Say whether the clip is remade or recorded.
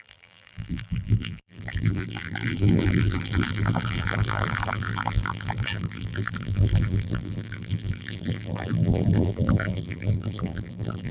remade